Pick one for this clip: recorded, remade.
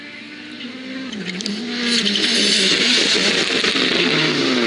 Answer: recorded